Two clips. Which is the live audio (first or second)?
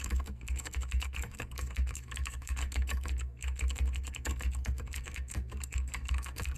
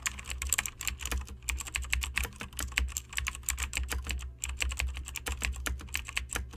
second